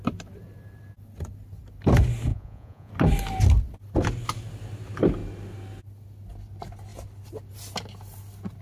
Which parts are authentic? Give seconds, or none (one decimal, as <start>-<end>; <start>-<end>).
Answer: 0.0-2.3; 2.9-8.6